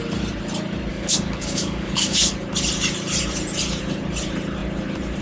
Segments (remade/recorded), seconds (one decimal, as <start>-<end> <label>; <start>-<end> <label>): 0.0-0.9 recorded; 0.9-2.3 remade; 2.3-5.2 recorded